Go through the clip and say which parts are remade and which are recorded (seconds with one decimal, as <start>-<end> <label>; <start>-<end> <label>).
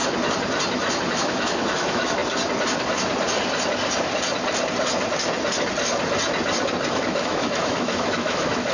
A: 0.0-1.1 recorded; 1.1-2.2 remade; 2.2-6.9 recorded; 6.9-8.7 remade